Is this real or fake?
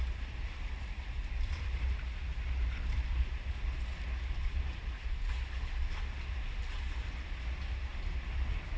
real